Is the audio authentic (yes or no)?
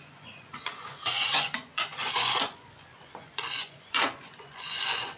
no